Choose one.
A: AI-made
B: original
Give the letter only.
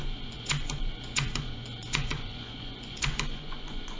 A